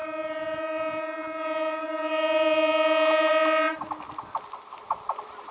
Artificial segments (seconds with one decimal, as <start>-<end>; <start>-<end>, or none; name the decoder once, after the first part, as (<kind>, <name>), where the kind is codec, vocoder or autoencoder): 0.0-3.3 (vocoder, Vocos)